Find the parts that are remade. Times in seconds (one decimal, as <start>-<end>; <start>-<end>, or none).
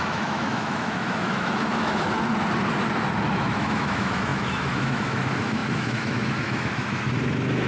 0.0-2.3; 3.3-7.7